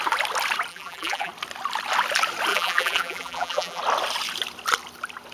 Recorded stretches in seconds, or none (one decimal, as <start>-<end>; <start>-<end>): 0.0-0.7; 1.3-2.5; 3.8-5.3